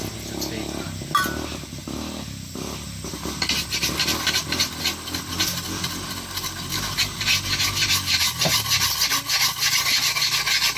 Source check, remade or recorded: recorded